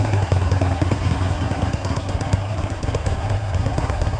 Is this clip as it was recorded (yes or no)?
no